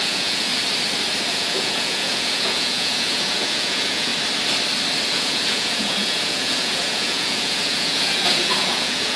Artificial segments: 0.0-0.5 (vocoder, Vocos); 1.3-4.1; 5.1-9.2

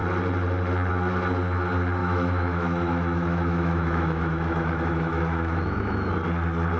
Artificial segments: 2.0-6.1 (autoencoder, DAC-VAE)

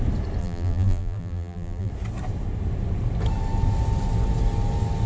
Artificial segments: 0.4-1.9 (vocoder, BigVGAN v2)

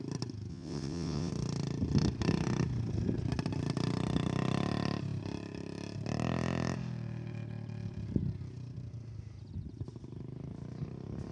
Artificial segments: 0.5-1.3 (vocoder, WaveNeXt)

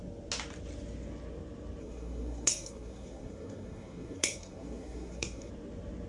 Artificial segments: 1.8-5.5 (codec, SNAC)

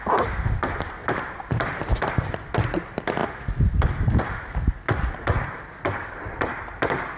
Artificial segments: 1.0-1.9 (vocoder, BigVGAN v2)

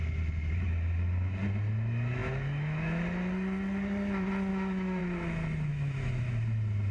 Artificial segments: 2.2-3.0 (autoencoder, DAC-VAE); 4.5-5.0; 5.7-6.4

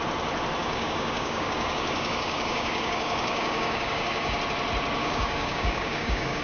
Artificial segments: 0.6-4.4 (codec, DAC); 5.0-6.4